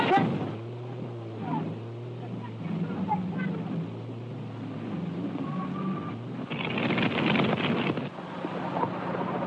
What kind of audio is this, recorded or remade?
recorded